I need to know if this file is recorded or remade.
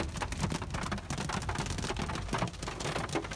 recorded